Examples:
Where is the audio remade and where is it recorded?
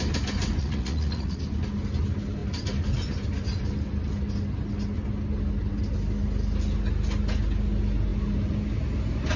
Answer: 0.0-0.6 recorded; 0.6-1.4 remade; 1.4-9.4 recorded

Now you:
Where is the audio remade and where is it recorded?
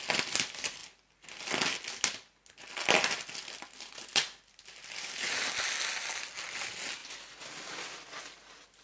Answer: 0.0-0.8 remade; 0.8-5.3 recorded; 5.3-7.0 remade; 7.0-8.3 recorded; 8.3-8.8 remade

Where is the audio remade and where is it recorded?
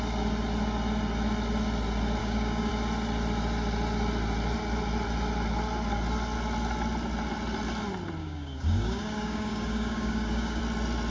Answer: 0.0-2.2 recorded; 2.2-2.7 remade; 2.7-8.2 recorded; 8.2-10.6 remade; 10.6-11.1 recorded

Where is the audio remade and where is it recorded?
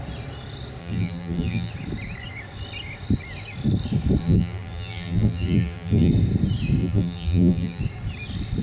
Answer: 0.0-0.8 recorded; 0.8-1.7 remade; 1.7-4.2 recorded; 4.2-6.1 remade; 6.1-6.8 recorded; 6.8-7.8 remade; 7.8-8.6 recorded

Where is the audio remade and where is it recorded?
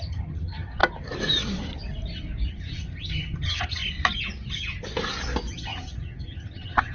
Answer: 0.0-0.8 remade; 0.8-2.5 recorded; 2.5-3.8 remade; 3.8-5.5 recorded; 5.5-6.9 remade